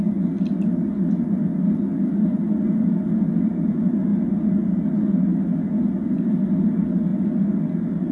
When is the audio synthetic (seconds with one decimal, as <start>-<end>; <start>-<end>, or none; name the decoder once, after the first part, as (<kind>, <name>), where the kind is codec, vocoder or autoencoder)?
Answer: none